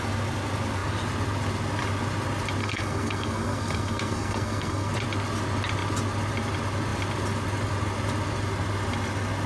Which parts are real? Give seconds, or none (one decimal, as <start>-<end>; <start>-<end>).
0.0-2.6; 4.9-9.5